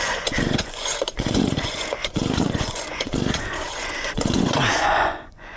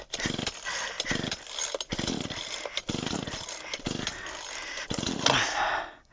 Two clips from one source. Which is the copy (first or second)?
first